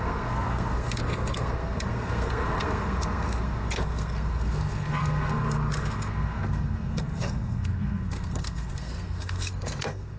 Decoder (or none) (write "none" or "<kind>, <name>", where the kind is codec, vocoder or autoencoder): codec, SNAC